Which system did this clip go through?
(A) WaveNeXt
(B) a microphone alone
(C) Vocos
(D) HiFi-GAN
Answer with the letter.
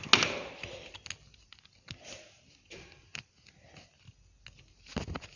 B